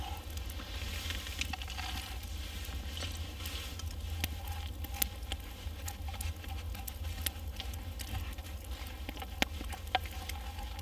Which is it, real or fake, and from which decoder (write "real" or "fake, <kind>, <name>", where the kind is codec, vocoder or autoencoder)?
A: real